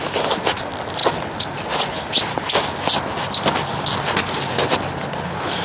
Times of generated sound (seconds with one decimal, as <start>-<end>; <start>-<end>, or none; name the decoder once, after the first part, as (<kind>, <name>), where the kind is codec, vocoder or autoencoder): none